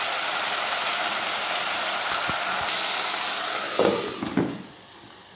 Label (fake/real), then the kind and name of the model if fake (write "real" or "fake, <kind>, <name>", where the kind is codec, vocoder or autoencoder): real